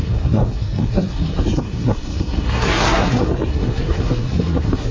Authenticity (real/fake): fake